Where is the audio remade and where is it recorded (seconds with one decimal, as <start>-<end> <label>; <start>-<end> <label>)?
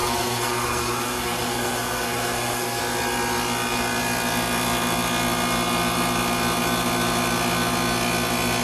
0.0-2.8 remade; 2.8-8.6 recorded